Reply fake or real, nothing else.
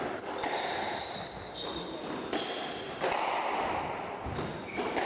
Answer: real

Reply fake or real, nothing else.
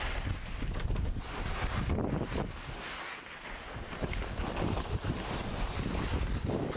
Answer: real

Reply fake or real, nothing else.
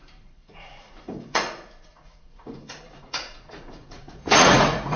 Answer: fake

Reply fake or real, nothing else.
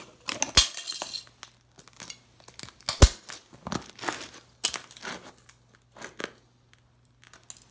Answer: real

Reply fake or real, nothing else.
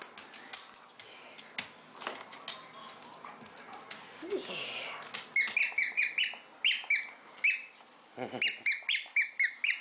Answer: real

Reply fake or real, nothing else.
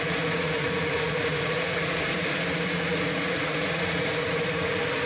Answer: fake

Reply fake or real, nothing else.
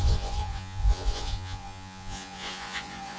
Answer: fake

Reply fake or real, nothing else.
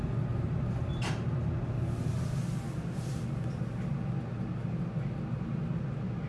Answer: real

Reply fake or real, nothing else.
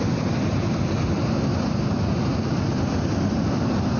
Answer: real